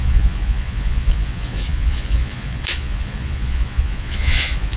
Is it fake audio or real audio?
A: fake